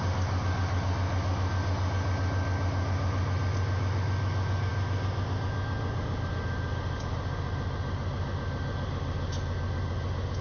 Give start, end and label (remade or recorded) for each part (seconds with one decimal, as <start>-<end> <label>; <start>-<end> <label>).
0.0-10.4 recorded